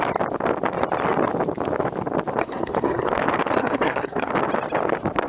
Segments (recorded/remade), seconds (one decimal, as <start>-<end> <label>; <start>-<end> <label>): 0.0-2.4 recorded; 2.4-3.1 remade; 3.1-3.6 recorded; 3.6-4.3 remade; 4.3-5.3 recorded